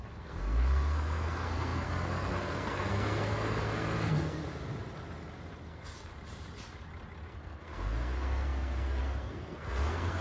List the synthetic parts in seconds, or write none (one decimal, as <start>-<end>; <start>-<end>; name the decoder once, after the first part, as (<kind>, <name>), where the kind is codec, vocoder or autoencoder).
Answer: 0.0-4.4 (codec, SNAC); 5.6-6.1; 7.2-10.2